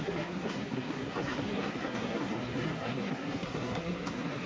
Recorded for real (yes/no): no